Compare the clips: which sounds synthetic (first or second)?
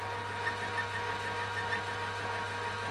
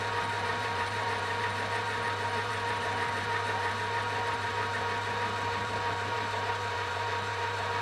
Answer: second